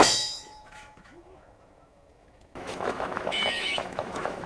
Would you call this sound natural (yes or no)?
no